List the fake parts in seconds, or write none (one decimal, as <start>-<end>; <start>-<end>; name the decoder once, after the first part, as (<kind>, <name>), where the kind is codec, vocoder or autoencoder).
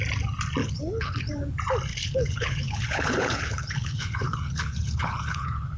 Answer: 0.6-1.3 (codec, HILCodec); 1.9-5.8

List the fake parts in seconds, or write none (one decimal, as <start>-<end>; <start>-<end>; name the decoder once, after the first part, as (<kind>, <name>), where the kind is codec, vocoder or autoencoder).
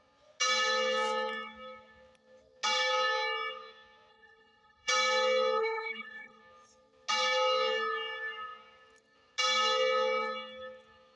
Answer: 4.1-4.9 (codec, HILCodec); 5.6-6.4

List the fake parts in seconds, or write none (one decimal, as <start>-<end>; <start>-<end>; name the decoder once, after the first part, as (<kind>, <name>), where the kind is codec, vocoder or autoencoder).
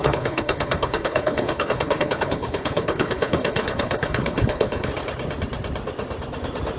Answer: 0.0-4.9 (codec, HILCodec)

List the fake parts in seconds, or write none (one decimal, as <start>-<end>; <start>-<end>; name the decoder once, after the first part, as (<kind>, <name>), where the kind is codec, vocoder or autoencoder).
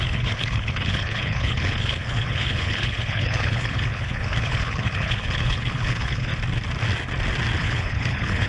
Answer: 0.0-6.3 (codec, HILCodec); 7.6-8.5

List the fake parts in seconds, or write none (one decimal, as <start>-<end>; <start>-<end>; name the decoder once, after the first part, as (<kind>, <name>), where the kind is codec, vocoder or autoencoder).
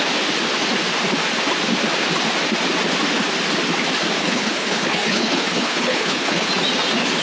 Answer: 4.2-6.5 (codec, HILCodec)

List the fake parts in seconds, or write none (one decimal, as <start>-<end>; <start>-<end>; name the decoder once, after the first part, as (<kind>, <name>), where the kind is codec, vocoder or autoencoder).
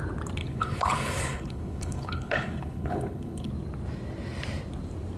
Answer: 0.4-3.5 (codec, HILCodec)